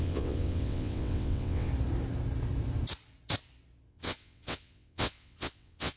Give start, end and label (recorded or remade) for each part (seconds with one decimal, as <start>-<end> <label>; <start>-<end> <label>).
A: 0.0-1.7 remade; 1.7-3.9 recorded; 3.9-6.0 remade